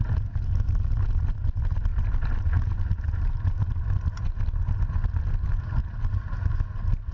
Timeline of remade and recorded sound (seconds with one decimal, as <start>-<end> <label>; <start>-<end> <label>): 0.0-1.9 recorded; 1.9-3.5 remade; 3.5-7.1 recorded